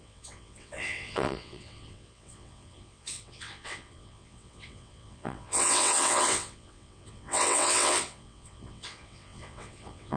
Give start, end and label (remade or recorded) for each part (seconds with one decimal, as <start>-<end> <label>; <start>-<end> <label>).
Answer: 0.0-10.2 remade